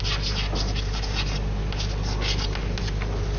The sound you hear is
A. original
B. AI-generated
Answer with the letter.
A